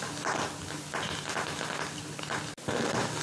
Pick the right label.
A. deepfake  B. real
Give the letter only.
B